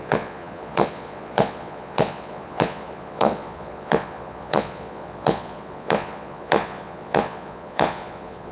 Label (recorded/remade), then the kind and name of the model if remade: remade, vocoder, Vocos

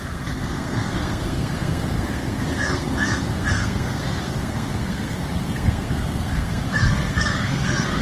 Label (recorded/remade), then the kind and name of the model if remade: remade, codec, SNAC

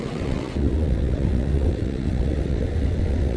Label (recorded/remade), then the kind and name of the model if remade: remade, vocoder, WaveNeXt